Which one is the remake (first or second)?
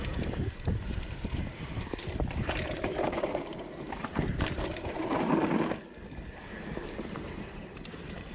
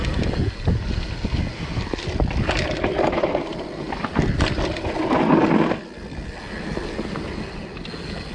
first